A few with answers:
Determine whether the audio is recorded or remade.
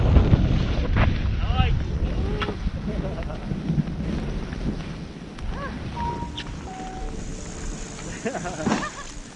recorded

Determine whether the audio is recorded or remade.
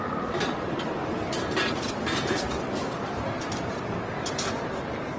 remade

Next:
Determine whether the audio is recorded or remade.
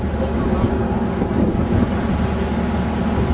recorded